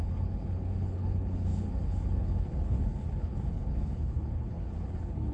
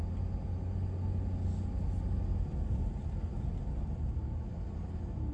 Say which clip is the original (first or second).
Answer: second